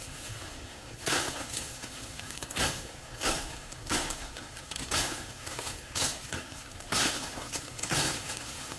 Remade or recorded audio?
remade